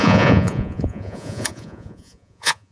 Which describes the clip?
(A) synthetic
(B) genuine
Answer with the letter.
A